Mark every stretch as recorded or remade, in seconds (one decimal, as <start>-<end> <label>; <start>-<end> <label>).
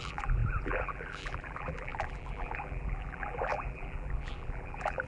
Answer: 0.0-5.1 remade